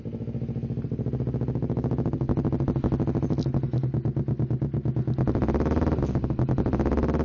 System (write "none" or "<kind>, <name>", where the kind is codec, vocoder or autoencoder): none